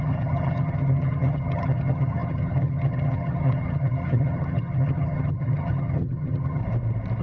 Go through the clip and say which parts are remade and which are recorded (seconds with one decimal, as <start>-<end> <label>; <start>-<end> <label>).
0.0-6.6 remade; 6.6-7.2 recorded